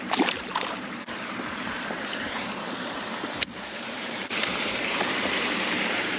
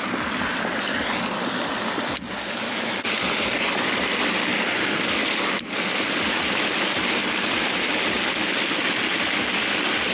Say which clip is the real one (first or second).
second